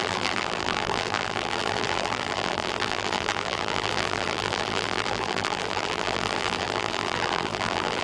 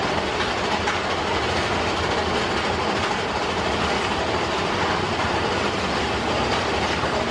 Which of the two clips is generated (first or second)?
first